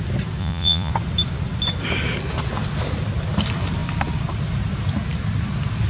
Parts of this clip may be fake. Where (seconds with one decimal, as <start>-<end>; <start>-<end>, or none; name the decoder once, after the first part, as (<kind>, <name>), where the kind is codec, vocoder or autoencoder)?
0.4-0.9 (vocoder, Vocos)